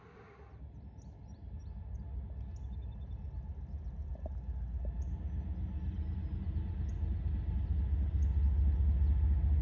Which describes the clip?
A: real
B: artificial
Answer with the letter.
A